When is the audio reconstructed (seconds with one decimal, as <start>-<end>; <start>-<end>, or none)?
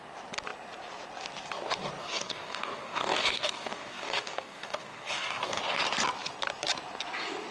2.0-5.6